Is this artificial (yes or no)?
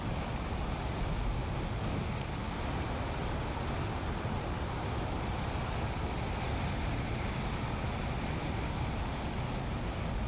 no